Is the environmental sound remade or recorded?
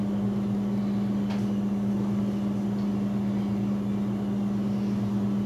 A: recorded